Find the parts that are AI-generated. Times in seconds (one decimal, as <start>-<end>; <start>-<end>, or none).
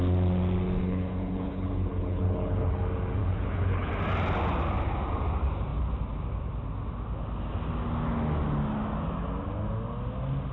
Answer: 0.8-2.8; 3.2-3.9